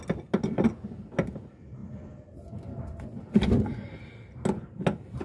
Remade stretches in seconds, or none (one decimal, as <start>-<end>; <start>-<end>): none